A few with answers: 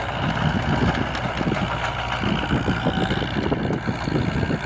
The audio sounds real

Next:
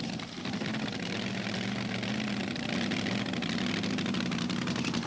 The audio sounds real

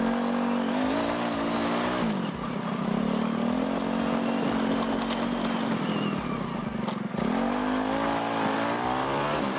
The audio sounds real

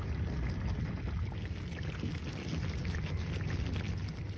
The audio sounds real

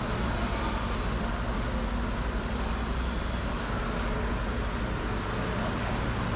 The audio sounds real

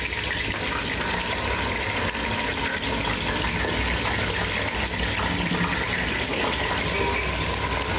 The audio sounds real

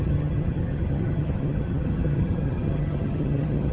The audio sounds fake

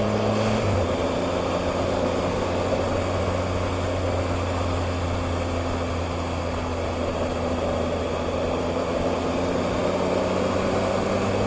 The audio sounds real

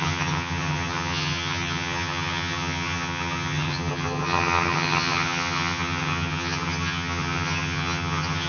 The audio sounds fake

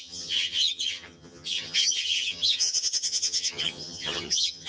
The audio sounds fake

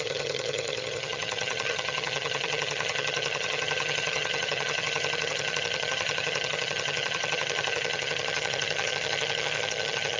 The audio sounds fake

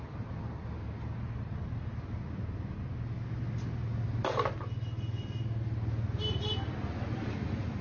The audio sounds real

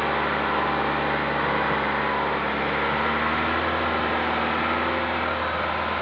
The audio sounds real